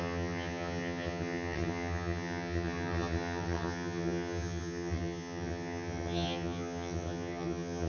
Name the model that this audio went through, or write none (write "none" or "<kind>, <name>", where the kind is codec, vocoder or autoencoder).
vocoder, HiFi-GAN